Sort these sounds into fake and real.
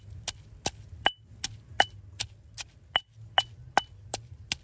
real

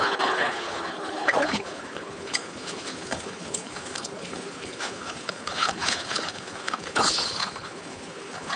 fake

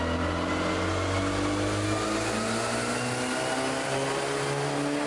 real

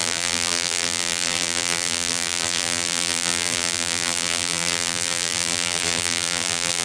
fake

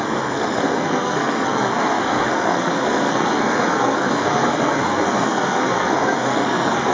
fake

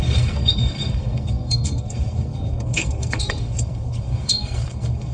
fake